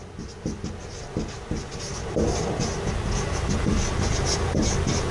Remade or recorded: recorded